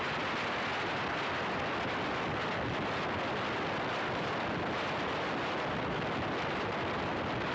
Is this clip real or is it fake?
real